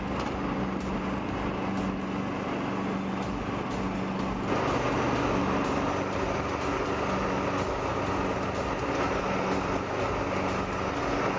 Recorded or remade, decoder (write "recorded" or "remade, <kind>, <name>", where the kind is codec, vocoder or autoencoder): recorded